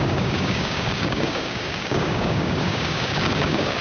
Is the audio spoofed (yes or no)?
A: yes